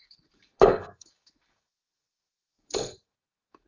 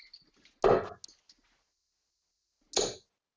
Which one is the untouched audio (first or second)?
second